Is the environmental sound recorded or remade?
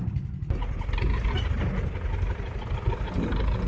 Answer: recorded